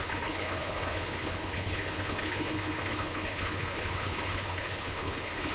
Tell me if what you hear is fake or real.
fake